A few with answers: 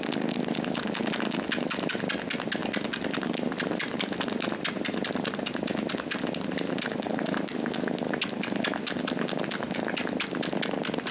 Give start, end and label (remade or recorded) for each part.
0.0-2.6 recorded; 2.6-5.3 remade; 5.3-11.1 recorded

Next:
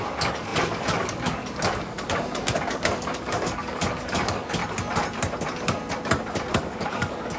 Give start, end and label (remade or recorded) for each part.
0.0-4.6 remade; 4.6-6.5 recorded; 6.5-7.4 remade

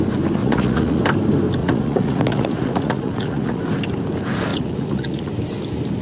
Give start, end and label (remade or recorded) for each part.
0.0-0.4 recorded; 0.4-1.0 remade; 1.0-1.6 recorded; 1.6-3.6 remade; 3.6-4.5 recorded; 4.5-5.3 remade; 5.3-6.0 recorded

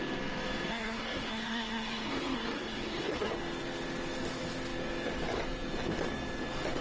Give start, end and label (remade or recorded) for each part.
0.0-0.7 recorded; 0.7-3.3 remade; 3.3-6.8 recorded

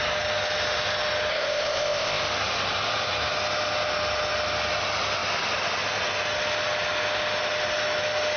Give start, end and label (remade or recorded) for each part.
0.0-1.3 recorded; 1.3-2.2 remade; 2.2-8.4 recorded

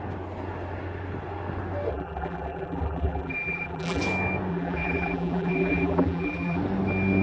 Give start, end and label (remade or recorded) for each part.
0.0-1.9 recorded; 1.9-4.0 remade; 4.0-4.5 recorded; 4.5-6.6 remade; 6.6-7.2 recorded

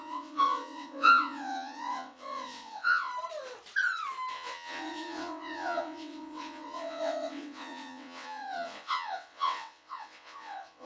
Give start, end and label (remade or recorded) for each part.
0.0-3.1 remade; 3.1-4.3 recorded; 4.3-10.9 remade